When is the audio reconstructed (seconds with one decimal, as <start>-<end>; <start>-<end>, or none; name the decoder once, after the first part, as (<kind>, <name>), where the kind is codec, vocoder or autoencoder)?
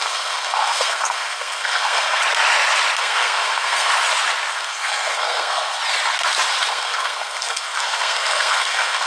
0.0-2.2 (codec, SNAC); 3.0-3.9; 4.5-5.8; 6.7-9.1